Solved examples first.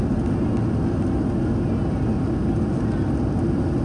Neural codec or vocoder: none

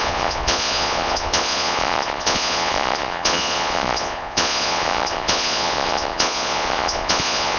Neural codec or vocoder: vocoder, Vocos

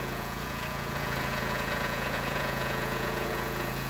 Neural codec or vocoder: vocoder, Vocos